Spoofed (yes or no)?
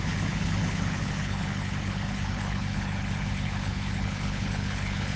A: yes